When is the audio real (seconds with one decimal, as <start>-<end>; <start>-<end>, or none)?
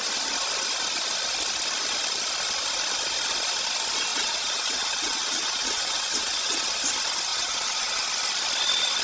0.0-4.1; 6.7-7.3; 8.1-9.0